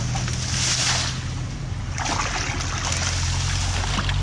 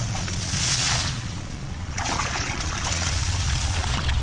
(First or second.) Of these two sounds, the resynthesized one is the second